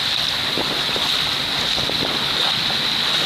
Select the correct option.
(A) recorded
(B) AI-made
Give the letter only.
A